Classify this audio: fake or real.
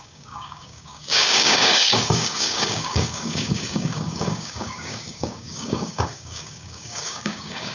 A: fake